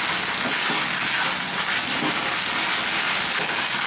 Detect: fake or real real